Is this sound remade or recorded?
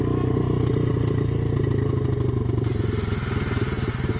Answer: recorded